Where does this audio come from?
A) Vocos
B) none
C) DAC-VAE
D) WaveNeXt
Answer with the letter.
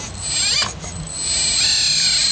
B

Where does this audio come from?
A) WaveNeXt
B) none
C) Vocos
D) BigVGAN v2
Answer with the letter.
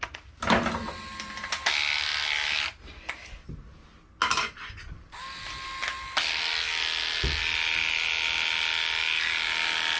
B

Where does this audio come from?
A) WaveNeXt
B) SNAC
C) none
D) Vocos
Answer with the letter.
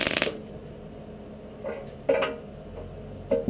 C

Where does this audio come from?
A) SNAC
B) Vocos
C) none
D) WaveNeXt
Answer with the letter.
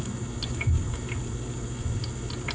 C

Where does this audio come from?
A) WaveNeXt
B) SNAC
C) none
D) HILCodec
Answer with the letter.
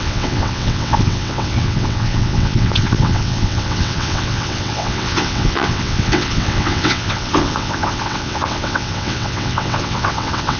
A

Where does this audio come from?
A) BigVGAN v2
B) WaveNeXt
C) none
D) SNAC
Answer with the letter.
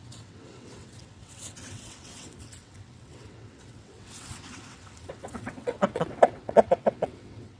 B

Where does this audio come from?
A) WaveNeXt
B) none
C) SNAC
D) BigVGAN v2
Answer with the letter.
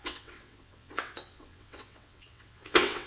A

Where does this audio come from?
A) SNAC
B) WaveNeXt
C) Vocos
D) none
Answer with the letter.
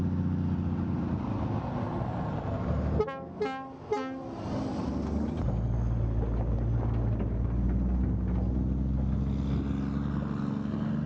D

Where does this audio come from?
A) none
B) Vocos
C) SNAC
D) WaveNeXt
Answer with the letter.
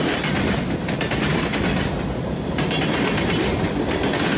A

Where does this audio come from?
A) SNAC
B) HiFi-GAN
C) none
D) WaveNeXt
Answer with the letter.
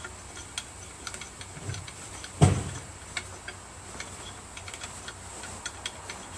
C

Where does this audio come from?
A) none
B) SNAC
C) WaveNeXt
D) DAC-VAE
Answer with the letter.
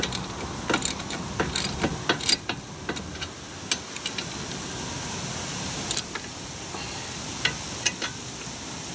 A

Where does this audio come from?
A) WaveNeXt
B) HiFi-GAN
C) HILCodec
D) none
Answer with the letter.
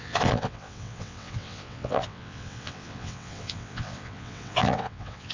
A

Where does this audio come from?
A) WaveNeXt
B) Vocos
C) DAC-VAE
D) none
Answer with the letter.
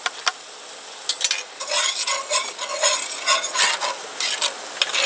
D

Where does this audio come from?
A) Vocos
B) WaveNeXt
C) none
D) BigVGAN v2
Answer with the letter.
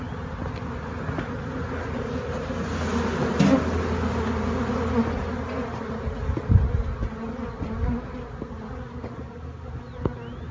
C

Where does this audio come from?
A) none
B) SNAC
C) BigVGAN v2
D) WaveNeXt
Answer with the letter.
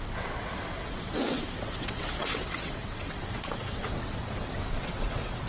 D